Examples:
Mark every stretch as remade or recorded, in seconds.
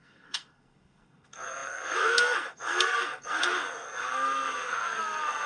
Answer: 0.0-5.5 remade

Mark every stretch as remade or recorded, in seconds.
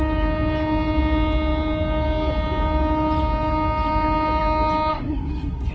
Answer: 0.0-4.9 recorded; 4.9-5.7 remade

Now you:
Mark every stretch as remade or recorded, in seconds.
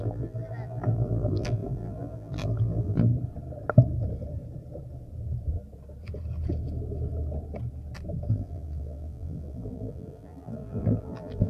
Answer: 0.0-3.1 remade; 3.1-8.3 recorded; 8.3-11.5 remade